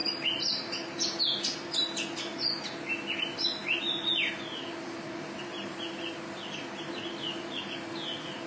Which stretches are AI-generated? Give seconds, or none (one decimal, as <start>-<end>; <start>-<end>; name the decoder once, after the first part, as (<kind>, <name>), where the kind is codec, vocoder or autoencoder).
none